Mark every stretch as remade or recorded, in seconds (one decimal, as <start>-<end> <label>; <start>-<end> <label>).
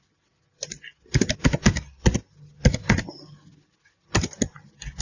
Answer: 0.0-5.0 recorded